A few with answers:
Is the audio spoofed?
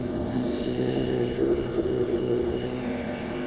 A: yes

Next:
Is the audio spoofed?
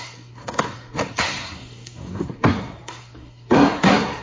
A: yes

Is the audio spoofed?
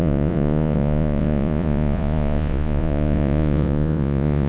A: yes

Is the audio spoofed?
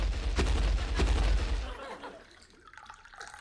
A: no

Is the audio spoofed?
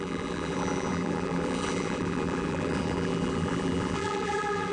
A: yes